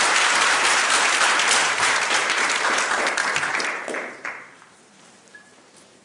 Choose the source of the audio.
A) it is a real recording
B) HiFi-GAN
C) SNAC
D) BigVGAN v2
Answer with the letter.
D